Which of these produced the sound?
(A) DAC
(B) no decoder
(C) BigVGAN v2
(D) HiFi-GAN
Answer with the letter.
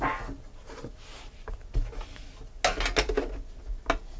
B